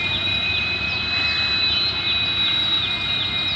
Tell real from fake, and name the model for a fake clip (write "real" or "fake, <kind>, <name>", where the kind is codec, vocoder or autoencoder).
real